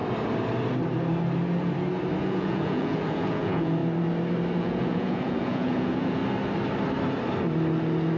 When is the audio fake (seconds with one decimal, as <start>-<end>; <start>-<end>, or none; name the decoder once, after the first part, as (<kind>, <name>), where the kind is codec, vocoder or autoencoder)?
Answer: 2.2-3.8 (vocoder, Vocos); 4.6-6.2